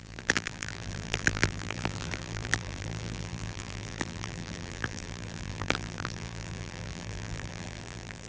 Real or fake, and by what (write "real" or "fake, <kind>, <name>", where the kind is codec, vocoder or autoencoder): fake, vocoder, BigVGAN v2